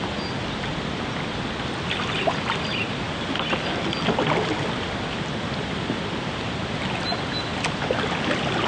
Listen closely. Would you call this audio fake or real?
real